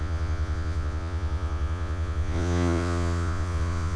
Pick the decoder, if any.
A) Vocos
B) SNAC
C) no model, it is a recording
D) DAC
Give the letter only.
A